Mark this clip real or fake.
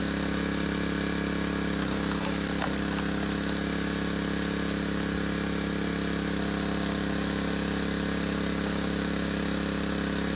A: real